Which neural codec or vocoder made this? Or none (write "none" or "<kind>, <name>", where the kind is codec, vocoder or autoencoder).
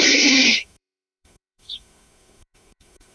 codec, SNAC